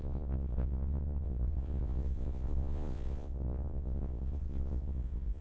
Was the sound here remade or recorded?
remade